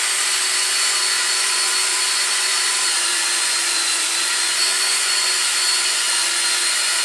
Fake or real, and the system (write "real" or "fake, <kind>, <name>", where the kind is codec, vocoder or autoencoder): fake, vocoder, Vocos